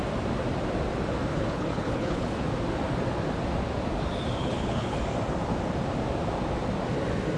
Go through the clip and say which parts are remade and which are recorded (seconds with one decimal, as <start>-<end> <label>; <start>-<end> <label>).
0.0-1.3 recorded; 1.3-2.5 remade; 2.5-4.4 recorded; 4.4-5.0 remade; 5.0-7.4 recorded